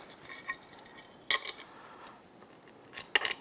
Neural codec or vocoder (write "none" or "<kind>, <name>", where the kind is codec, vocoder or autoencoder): none